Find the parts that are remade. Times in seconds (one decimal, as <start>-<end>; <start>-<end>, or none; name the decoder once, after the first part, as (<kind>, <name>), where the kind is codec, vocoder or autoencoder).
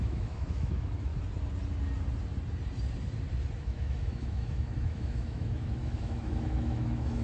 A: 0.0-1.1 (autoencoder, DAC-VAE); 3.6-7.2